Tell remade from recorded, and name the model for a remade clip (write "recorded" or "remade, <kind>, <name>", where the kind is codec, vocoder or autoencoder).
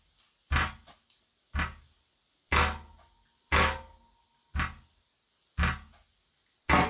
recorded